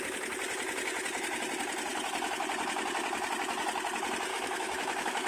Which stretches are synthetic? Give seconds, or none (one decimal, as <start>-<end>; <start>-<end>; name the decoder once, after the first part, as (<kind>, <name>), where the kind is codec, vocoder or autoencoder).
4.3-5.3 (autoencoder, DAC-VAE)